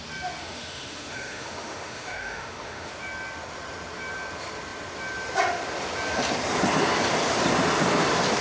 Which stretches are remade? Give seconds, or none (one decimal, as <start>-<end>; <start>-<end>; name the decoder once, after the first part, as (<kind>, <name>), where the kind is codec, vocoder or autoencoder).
0.4-2.9 (autoencoder, DAC-VAE)